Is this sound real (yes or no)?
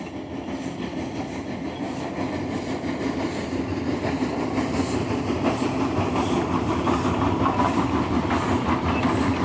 yes